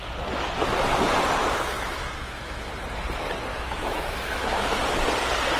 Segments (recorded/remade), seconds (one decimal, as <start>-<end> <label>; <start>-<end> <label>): 0.0-1.4 recorded; 1.4-2.7 remade; 2.7-3.5 recorded; 3.5-4.8 remade; 4.8-5.6 recorded

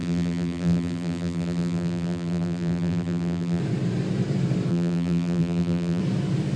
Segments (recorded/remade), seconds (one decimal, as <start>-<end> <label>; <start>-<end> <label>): 0.0-3.6 remade; 3.6-4.7 recorded; 4.7-6.0 remade; 6.0-6.6 recorded